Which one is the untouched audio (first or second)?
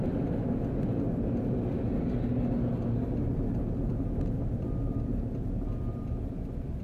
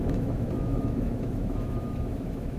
first